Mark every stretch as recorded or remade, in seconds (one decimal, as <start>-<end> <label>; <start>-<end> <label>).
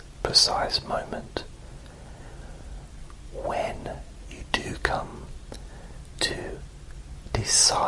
0.0-7.9 recorded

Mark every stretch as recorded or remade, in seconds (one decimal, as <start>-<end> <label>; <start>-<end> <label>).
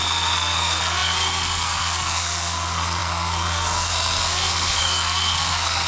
0.0-5.9 remade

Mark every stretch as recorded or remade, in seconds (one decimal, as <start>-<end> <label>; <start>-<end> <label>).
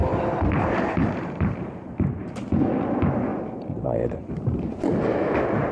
0.0-1.0 recorded; 1.0-2.5 remade; 2.5-3.3 recorded; 3.3-4.7 remade; 4.7-5.7 recorded